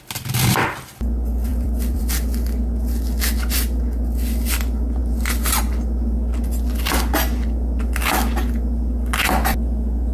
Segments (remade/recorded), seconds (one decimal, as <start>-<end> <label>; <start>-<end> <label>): 0.0-1.5 recorded; 1.5-2.0 remade; 2.0-10.1 recorded